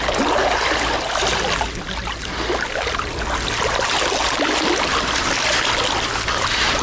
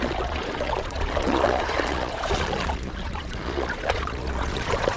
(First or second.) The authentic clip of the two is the first